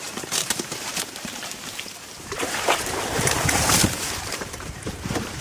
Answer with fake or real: fake